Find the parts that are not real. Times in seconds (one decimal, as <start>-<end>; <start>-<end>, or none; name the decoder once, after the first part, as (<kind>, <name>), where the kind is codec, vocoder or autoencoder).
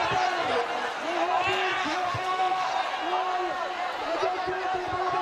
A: 1.8-2.7 (autoencoder, DAC-VAE)